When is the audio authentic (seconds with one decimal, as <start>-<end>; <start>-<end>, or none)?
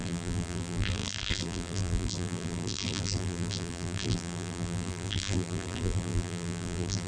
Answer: none